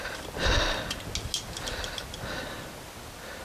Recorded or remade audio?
recorded